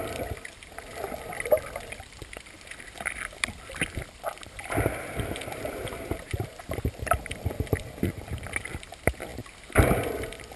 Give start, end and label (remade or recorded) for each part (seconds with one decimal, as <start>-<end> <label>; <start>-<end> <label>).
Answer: 0.0-9.3 remade; 9.3-10.1 recorded; 10.1-10.6 remade